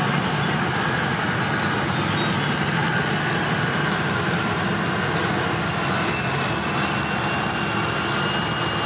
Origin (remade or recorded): recorded